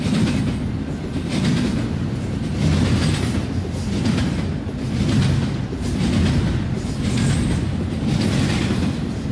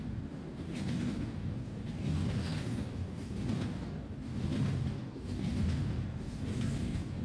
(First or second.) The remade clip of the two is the second